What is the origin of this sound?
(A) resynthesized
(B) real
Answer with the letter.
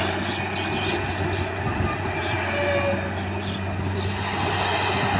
B